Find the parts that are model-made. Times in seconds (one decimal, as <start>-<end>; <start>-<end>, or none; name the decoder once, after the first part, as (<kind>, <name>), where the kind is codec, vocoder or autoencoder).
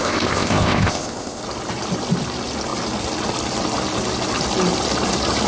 0.0-1.4 (codec, ZipCodec)